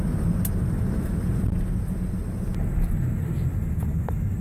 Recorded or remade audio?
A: recorded